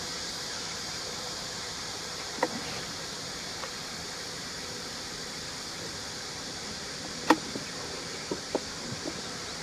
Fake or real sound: fake